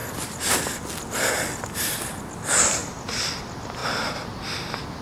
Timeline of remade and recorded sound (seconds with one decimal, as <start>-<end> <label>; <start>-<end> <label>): 0.0-5.0 recorded